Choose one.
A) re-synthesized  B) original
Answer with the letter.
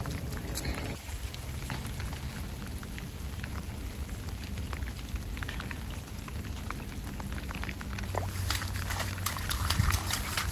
B